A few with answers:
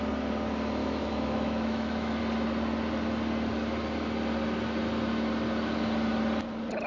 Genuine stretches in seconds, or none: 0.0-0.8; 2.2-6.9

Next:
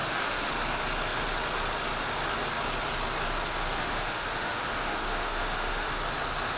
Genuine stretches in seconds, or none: 0.5-3.8; 5.9-6.6

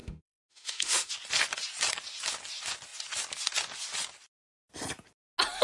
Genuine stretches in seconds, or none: 1.1-5.6